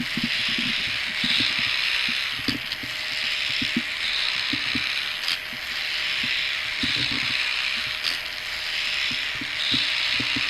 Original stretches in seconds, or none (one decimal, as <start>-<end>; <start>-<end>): 0.0-10.5